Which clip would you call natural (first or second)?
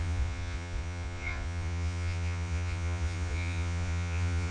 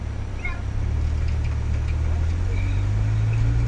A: second